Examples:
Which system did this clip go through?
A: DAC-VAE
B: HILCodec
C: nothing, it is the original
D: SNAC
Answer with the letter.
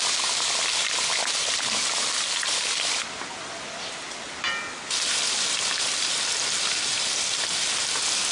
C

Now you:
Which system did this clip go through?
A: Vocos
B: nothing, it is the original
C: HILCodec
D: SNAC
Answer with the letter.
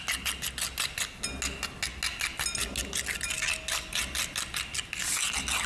B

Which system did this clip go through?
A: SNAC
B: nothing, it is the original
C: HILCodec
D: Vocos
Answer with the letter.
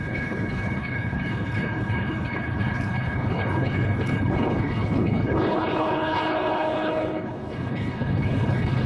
C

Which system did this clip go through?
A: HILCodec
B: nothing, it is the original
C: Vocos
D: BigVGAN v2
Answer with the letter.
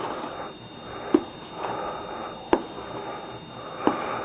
B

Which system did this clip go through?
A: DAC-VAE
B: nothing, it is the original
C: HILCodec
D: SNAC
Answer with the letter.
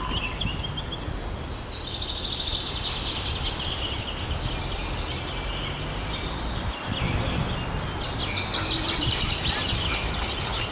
B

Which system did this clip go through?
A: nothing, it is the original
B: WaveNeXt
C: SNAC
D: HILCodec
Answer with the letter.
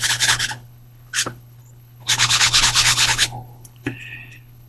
D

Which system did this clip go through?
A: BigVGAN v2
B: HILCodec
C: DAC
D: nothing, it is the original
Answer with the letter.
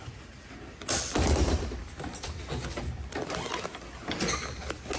D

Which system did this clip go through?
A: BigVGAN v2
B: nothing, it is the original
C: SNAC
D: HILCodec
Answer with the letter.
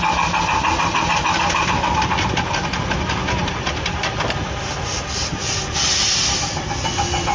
B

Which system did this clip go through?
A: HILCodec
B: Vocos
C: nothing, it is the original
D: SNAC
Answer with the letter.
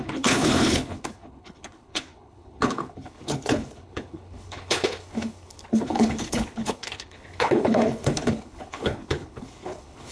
A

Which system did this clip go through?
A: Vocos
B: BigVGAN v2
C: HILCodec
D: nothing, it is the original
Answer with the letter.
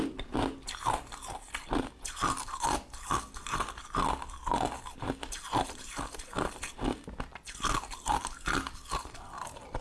D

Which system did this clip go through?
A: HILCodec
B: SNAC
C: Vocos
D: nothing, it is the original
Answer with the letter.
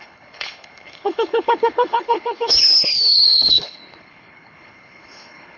A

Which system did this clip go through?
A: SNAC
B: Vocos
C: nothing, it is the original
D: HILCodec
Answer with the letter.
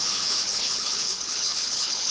D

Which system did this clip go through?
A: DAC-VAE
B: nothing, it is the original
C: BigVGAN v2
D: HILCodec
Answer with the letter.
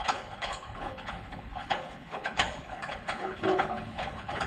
D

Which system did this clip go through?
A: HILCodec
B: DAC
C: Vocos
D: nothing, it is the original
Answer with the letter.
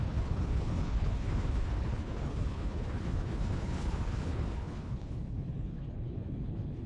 A